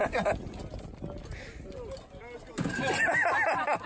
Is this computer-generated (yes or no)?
no